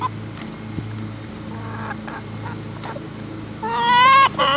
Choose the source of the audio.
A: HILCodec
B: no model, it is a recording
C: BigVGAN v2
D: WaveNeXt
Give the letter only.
B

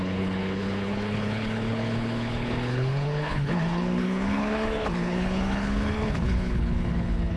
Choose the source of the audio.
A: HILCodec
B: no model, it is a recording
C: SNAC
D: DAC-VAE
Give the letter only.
A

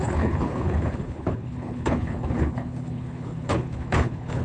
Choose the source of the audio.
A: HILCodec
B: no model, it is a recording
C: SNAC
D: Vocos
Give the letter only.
A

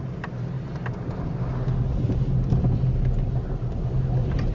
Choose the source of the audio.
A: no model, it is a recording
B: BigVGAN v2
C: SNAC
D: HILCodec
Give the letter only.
A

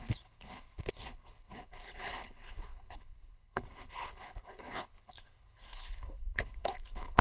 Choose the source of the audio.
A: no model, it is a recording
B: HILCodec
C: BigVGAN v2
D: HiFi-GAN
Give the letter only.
B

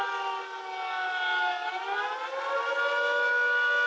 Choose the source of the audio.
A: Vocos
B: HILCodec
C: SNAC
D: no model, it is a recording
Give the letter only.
D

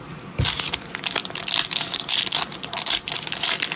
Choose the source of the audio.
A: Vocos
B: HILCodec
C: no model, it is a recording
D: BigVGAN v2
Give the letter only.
C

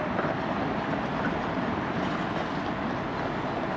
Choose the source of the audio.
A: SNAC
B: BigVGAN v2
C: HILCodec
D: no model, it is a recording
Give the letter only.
D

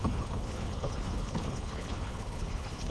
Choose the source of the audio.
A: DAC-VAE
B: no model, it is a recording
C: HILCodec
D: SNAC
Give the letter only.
C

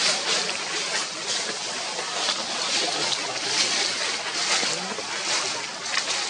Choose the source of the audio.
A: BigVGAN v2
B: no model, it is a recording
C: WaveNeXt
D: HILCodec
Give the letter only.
B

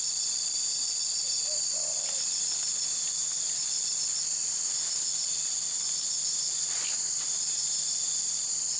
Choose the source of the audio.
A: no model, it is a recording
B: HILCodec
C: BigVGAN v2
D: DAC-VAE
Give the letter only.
A